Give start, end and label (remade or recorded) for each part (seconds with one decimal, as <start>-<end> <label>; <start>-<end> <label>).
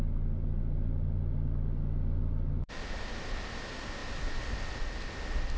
0.0-5.6 recorded